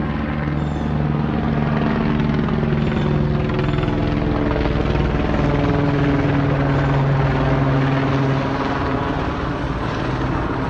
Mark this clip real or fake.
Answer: real